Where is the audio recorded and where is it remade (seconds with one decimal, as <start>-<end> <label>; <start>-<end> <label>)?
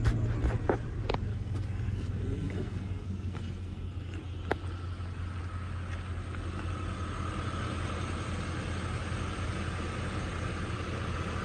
0.0-1.3 recorded; 1.3-4.2 remade; 4.2-11.4 recorded